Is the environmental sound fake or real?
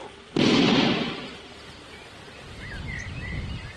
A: real